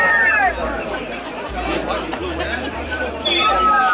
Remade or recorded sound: remade